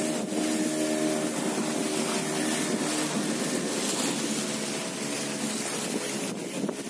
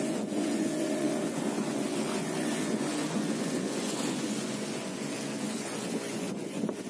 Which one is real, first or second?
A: first